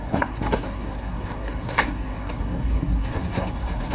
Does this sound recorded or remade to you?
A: remade